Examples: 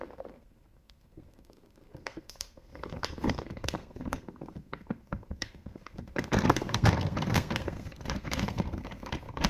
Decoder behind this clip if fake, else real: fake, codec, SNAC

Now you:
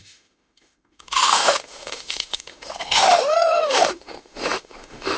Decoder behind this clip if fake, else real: fake, autoencoder, DAC-VAE